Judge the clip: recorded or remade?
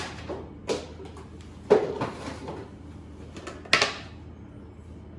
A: recorded